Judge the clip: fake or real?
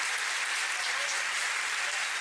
real